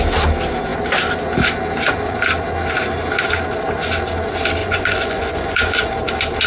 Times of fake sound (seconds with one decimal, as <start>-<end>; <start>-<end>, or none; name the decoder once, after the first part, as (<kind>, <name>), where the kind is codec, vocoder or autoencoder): 4.6-5.9 (vocoder, Vocos)